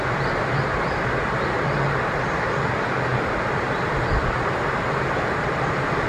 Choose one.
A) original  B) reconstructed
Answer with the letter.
A